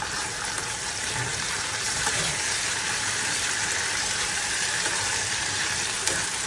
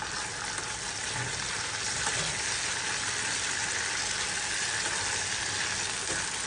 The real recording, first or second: second